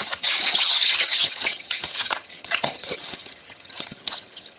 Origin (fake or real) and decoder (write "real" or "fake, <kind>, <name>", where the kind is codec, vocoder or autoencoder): fake, vocoder, HiFi-GAN